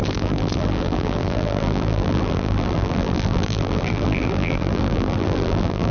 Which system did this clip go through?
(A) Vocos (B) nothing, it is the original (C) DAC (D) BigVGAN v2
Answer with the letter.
D